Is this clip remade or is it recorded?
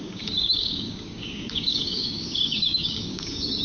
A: remade